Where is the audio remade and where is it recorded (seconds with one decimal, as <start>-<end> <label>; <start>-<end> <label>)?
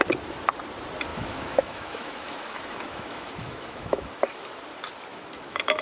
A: 0.0-1.1 recorded; 1.1-4.6 remade; 4.6-5.1 recorded; 5.1-5.8 remade